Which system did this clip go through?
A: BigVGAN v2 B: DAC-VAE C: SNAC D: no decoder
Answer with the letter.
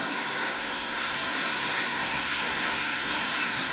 C